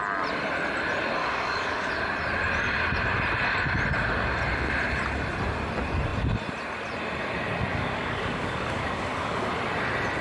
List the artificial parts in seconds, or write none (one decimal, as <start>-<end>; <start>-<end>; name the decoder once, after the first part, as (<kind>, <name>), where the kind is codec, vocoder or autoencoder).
1.2-1.9 (codec, DAC); 7.7-9.5

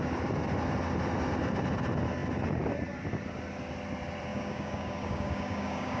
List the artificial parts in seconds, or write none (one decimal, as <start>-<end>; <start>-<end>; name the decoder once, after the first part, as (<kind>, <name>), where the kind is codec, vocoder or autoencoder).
4.3-6.0 (codec, DAC)

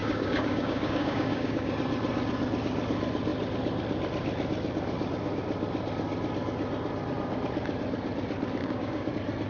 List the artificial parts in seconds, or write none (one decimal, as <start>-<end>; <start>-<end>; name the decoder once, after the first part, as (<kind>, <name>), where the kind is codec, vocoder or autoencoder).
0.0-1.7 (codec, DAC); 8.6-9.1